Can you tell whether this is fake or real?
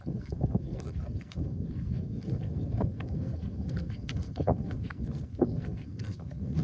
fake